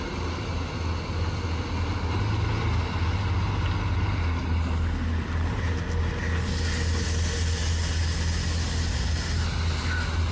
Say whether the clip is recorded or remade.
recorded